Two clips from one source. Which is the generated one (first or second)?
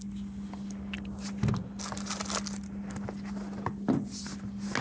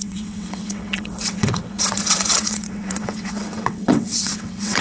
second